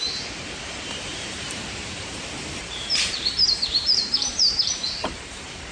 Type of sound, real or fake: fake